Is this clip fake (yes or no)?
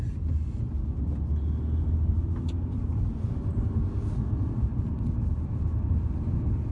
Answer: no